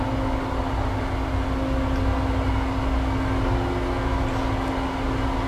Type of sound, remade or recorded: recorded